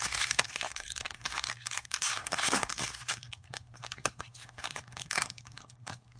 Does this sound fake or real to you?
fake